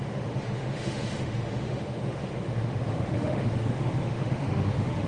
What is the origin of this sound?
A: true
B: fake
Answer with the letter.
B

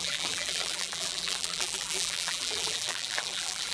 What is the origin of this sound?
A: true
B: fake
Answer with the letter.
B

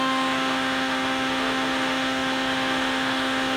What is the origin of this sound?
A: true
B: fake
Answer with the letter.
B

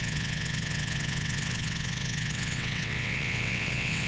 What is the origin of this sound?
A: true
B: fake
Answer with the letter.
B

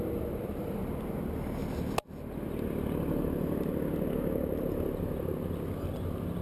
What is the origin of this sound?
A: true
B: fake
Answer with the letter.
A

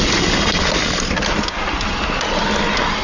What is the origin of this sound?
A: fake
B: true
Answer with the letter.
B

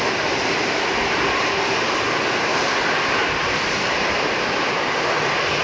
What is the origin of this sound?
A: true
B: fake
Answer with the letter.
A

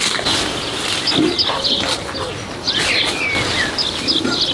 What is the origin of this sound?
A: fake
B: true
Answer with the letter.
B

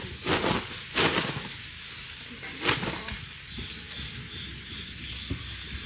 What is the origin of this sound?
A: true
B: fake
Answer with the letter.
A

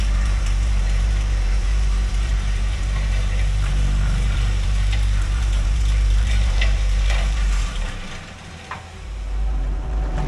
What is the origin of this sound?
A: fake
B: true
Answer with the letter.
A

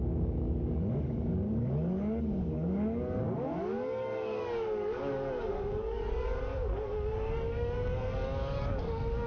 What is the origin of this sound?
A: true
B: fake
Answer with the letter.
B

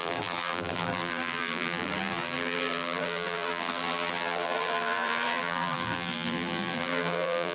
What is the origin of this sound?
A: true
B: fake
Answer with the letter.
B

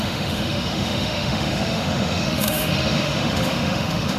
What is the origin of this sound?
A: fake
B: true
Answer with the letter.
A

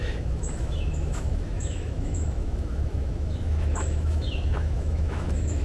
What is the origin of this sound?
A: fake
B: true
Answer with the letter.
A